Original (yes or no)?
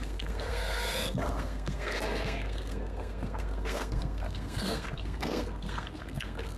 no